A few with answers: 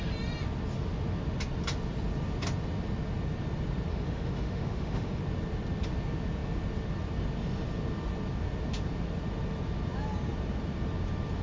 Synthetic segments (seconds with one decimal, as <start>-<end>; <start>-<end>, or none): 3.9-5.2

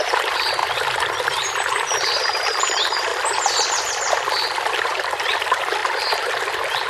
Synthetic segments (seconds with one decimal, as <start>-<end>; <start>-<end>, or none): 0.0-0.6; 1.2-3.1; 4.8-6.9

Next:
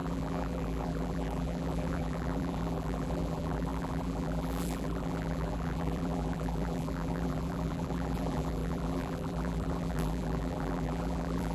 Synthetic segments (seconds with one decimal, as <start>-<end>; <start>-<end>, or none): 0.0-11.5